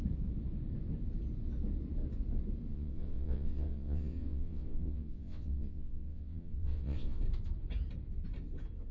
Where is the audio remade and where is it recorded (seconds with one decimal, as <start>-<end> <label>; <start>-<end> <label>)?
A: 0.0-2.7 recorded; 2.7-7.2 remade; 7.2-8.9 recorded

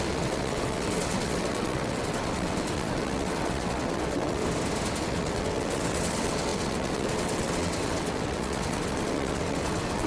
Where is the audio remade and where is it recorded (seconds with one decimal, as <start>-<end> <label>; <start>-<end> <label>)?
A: 0.0-4.4 remade; 4.4-5.0 recorded; 5.0-10.1 remade

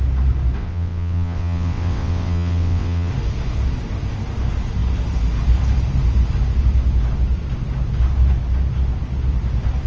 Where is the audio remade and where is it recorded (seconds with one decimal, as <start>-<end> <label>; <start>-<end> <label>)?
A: 0.0-0.6 recorded; 0.6-3.1 remade; 3.1-9.9 recorded

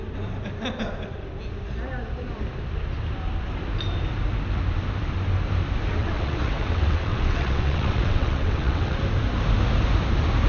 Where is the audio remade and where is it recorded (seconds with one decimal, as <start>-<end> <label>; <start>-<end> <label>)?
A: 0.0-6.0 recorded; 6.0-9.0 remade; 9.0-10.5 recorded

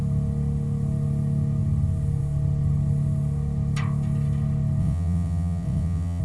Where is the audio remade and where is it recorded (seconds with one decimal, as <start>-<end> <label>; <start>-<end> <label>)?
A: 0.0-4.8 recorded; 4.8-6.2 remade

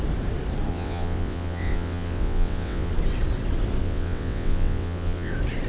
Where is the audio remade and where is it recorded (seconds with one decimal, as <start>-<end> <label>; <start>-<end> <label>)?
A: 0.0-0.7 recorded; 0.7-2.9 remade; 2.9-3.8 recorded; 3.8-5.3 remade; 5.3-5.7 recorded

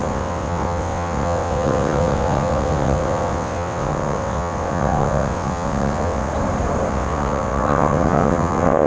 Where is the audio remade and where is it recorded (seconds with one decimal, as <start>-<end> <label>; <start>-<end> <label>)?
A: 0.0-6.3 remade; 6.3-6.9 recorded; 6.9-8.9 remade